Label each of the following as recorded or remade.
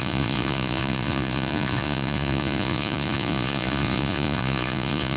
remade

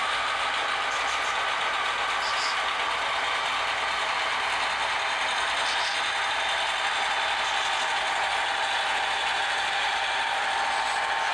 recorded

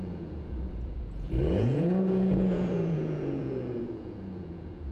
remade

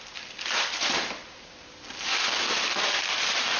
recorded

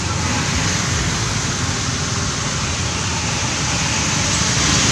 recorded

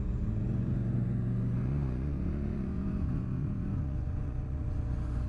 remade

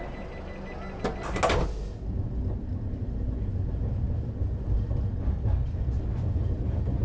recorded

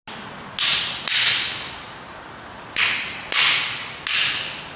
recorded